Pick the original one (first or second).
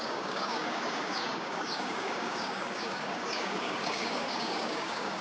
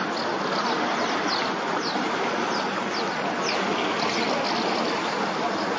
second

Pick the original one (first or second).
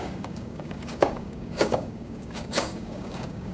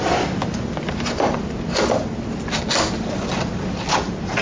second